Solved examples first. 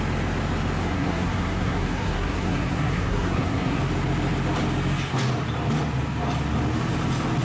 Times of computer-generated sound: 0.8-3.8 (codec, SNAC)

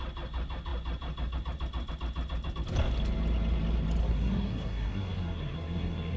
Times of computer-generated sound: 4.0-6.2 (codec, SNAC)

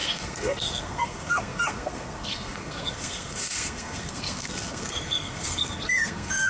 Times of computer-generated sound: 0.0-6.5 (codec, SNAC)

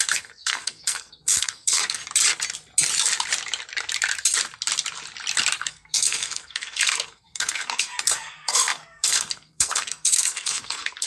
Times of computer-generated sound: 0.0-2.0 (codec, SNAC); 5.6-11.1